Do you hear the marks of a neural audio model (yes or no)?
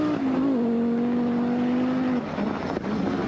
no